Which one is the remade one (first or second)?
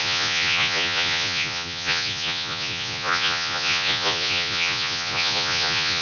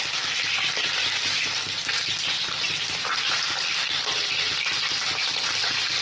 first